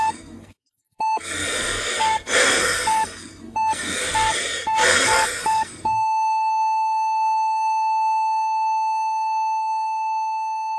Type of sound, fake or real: fake